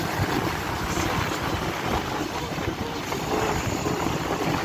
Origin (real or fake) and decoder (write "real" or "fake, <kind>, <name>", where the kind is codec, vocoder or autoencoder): real